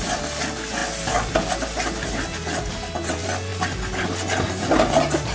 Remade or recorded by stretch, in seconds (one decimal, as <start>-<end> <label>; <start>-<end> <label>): 0.0-5.3 recorded